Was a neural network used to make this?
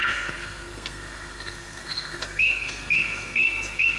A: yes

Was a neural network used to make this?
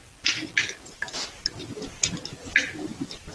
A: no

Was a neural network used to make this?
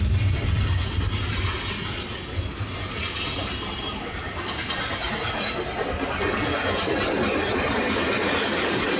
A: no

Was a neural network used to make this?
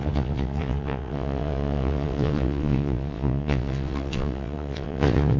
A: yes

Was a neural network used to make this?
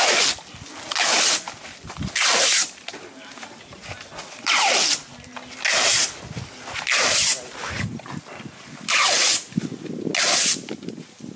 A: no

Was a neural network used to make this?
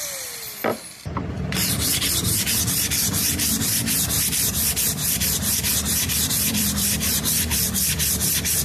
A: yes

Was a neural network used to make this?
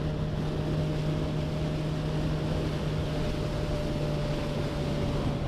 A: no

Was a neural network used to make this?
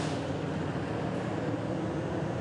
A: no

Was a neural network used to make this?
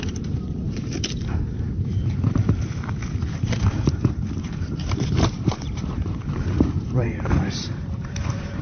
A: yes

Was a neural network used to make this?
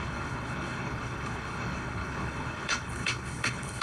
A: yes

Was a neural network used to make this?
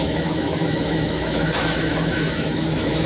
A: yes